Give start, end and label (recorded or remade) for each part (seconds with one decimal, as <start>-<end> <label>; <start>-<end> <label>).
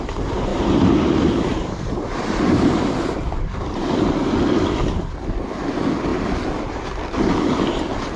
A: 0.0-0.5 recorded; 0.5-1.1 remade; 1.1-1.5 recorded; 1.5-3.2 remade; 3.2-8.2 recorded